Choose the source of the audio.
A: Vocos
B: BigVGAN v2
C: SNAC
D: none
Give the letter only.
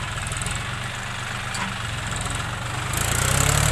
D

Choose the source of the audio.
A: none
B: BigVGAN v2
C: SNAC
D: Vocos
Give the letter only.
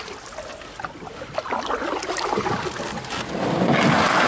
A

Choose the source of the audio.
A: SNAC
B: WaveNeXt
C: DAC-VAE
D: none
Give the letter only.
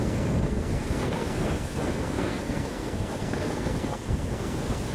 A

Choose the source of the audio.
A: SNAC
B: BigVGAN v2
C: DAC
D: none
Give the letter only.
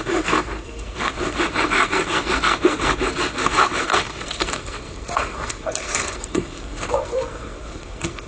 A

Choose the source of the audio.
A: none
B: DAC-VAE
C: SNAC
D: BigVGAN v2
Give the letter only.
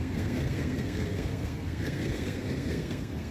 C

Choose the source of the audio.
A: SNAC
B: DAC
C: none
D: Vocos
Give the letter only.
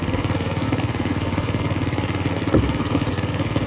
A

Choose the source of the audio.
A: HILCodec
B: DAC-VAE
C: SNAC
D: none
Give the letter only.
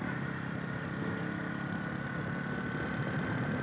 D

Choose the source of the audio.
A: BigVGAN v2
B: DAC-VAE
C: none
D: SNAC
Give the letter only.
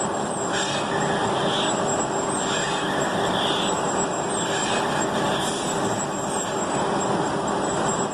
C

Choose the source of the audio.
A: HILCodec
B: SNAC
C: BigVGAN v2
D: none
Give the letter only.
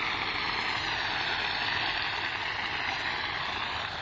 D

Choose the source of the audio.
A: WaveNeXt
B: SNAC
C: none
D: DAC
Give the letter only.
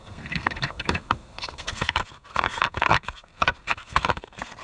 B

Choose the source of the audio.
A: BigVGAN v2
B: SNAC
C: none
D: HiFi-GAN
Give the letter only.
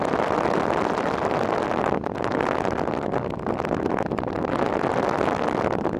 C